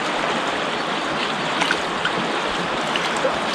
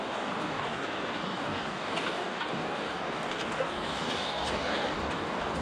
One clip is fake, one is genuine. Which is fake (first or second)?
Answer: second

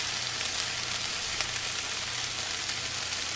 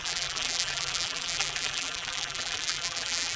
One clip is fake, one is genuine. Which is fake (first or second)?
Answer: second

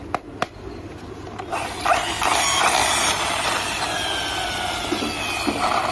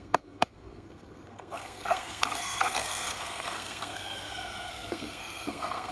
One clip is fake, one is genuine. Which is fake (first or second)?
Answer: second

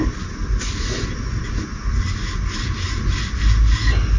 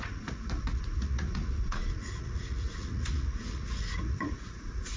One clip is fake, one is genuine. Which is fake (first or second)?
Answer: second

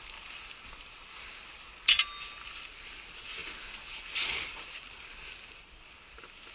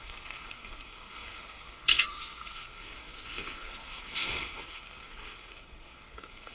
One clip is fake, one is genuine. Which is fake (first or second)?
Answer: second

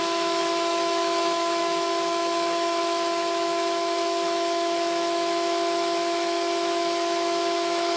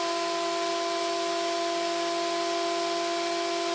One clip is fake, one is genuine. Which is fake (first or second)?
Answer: first